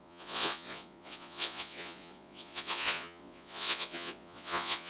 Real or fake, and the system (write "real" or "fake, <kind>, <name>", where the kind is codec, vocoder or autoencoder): fake, vocoder, Vocos